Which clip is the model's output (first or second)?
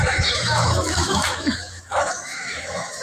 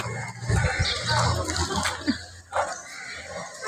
first